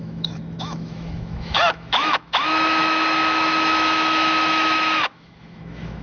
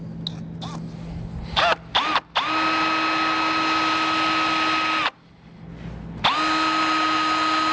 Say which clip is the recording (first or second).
second